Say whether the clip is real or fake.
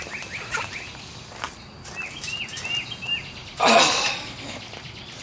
real